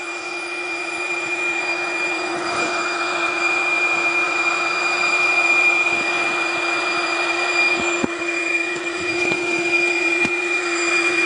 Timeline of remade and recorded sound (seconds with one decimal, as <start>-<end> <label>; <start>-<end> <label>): 0.0-11.3 remade